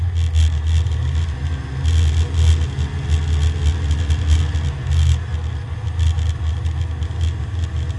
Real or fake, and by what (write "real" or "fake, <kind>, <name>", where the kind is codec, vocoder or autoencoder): real